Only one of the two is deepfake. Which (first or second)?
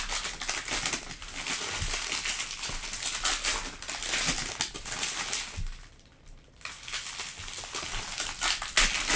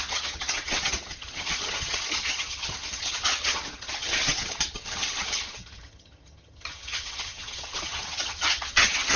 second